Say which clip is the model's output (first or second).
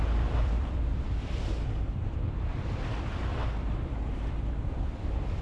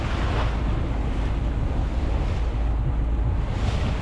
first